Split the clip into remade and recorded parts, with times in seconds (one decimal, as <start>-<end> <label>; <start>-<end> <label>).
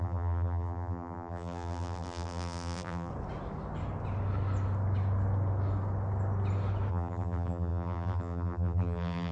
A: 0.0-3.1 remade; 3.1-6.9 recorded; 6.9-9.3 remade